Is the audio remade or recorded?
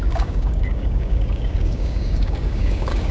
remade